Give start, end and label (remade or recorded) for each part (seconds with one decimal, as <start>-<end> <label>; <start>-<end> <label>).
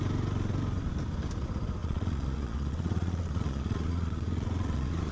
0.0-1.8 recorded; 1.8-5.1 remade